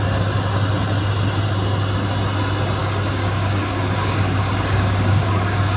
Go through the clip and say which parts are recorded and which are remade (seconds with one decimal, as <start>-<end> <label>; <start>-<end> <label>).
0.0-2.8 recorded; 2.8-5.8 remade